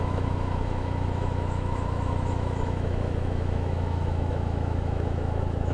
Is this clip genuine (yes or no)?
no